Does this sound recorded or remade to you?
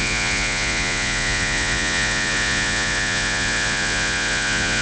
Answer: remade